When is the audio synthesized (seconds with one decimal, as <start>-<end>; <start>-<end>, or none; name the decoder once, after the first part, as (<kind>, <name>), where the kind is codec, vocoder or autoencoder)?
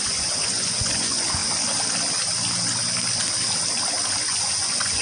0.0-1.4 (vocoder, Vocos); 4.2-5.0